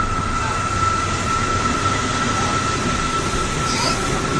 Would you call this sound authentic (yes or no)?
yes